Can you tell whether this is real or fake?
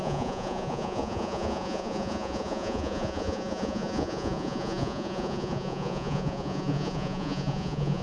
fake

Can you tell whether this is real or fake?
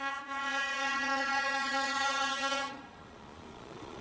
fake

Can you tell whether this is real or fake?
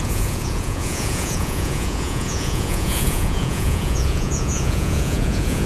fake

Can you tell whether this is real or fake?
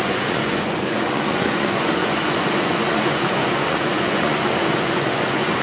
fake